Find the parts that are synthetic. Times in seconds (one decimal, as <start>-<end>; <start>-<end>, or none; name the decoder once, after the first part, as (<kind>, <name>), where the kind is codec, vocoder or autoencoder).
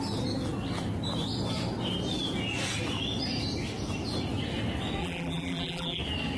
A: 5.0-6.0 (vocoder, BigVGAN v2)